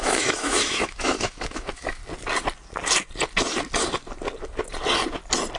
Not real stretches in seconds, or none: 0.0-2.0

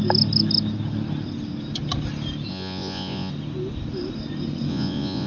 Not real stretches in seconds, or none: 2.5-3.3; 4.7-5.3

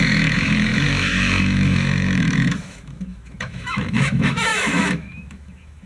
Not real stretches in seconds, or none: 0.0-5.9

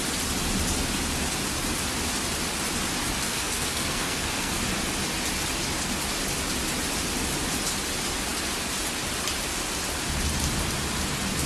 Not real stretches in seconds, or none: 3.3-4.6

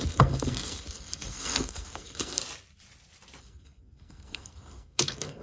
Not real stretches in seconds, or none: 0.0-2.4; 3.4-5.4

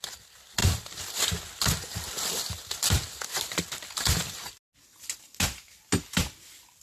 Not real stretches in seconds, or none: 0.6-4.5

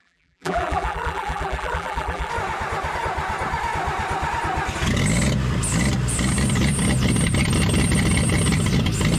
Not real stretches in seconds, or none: 0.0-2.3